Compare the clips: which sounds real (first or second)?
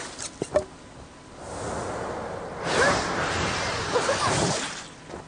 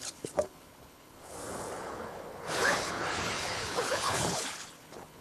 first